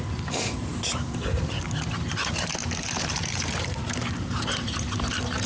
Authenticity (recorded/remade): remade